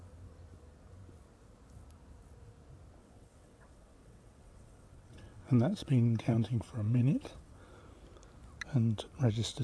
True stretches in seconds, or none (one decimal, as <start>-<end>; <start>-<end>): 0.0-3.0; 7.7-9.6